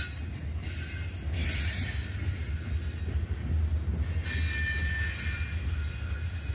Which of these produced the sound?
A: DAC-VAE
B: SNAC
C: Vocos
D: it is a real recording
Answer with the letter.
D